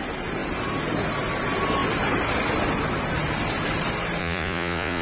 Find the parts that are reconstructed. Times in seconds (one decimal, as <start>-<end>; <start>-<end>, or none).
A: 4.2-5.0